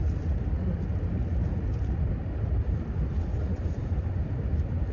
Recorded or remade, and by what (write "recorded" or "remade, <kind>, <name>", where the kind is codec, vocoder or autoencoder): recorded